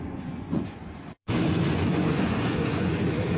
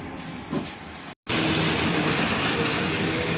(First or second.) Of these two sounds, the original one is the second